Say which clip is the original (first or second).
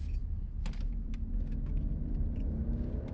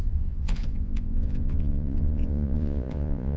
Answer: first